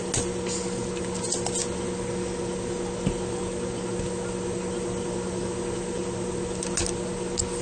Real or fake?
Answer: real